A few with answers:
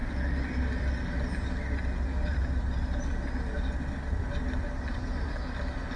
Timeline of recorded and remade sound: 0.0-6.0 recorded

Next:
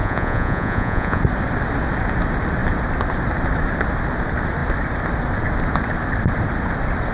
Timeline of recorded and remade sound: 0.0-1.2 remade; 1.2-7.1 recorded